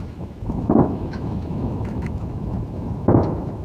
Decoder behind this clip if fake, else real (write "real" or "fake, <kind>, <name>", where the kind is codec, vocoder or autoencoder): fake, autoencoder, DAC-VAE